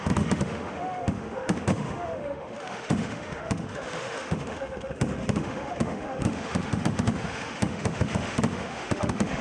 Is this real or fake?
fake